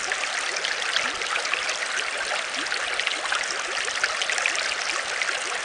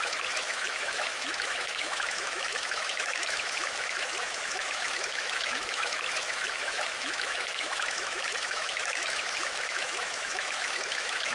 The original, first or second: first